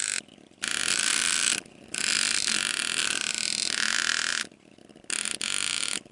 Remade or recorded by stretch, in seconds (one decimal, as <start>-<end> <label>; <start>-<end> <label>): 0.0-6.1 recorded